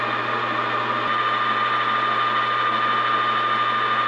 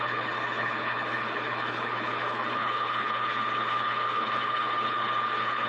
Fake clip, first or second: second